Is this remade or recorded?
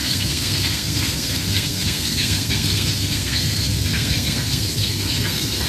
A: remade